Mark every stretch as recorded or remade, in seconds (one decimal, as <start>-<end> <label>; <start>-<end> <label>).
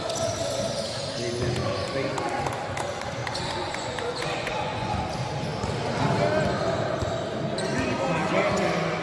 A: 0.0-3.2 recorded; 3.2-4.9 remade; 4.9-9.0 recorded